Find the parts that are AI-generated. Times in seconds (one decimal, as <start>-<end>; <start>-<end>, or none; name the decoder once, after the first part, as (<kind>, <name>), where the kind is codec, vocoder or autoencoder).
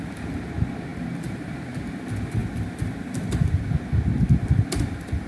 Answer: 2.4-3.5 (vocoder, BigVGAN v2)